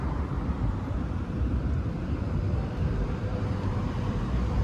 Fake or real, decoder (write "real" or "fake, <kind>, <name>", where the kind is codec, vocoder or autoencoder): real